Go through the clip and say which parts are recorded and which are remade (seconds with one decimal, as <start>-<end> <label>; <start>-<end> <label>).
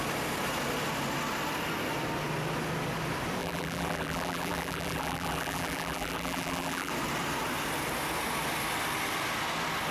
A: 0.0-3.4 recorded; 3.4-6.9 remade; 6.9-9.9 recorded